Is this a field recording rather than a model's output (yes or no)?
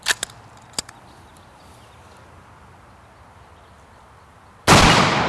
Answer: yes